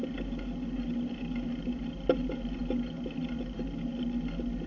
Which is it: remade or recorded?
recorded